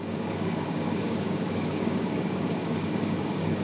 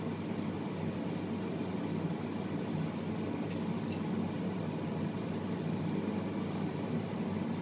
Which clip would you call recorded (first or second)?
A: second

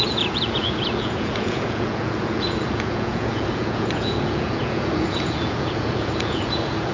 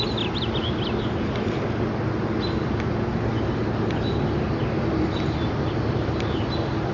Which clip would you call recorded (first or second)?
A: second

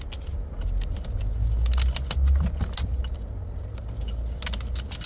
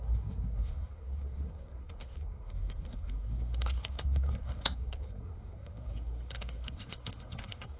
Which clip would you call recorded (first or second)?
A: first